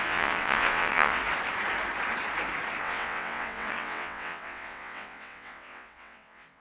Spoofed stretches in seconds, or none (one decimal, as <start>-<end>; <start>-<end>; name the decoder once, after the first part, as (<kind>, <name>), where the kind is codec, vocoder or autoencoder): 0.0-1.2 (vocoder, WaveNeXt); 2.8-6.6